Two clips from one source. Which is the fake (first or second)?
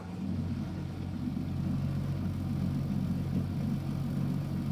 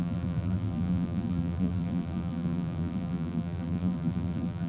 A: second